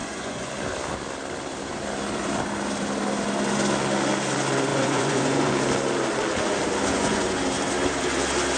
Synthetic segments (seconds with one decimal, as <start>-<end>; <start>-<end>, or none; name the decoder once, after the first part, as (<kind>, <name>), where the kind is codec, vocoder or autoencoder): 0.0-0.5 (vocoder, Vocos); 4.7-5.5; 6.9-7.4